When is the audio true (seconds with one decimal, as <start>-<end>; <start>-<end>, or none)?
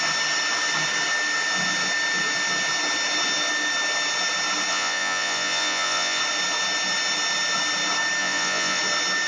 0.0-4.7; 6.2-8.2; 8.8-9.3